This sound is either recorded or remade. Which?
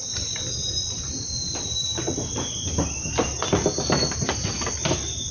recorded